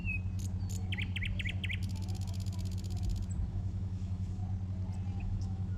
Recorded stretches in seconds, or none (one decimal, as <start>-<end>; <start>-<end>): 0.0-3.5; 4.4-5.2